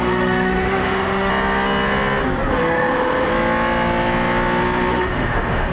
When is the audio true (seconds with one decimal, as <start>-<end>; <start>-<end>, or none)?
1.3-2.5; 3.3-4.9